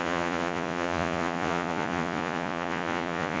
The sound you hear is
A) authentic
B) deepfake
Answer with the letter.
B